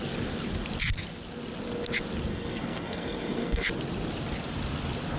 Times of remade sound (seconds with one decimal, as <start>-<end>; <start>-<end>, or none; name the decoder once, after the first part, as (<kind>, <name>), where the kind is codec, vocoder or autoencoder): 2.3-3.7 (codec, SNAC)